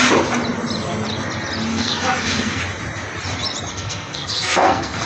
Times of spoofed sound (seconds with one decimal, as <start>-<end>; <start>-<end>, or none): 1.7-2.6; 3.7-5.1